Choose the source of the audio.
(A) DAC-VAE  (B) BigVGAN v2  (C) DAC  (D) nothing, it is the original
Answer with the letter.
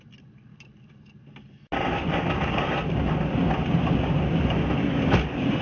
D